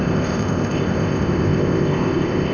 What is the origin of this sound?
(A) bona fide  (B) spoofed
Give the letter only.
B